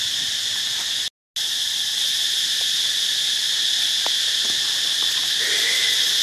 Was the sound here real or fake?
real